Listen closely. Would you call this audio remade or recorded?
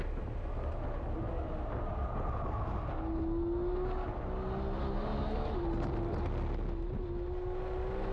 recorded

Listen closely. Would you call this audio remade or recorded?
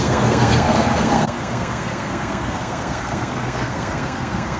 remade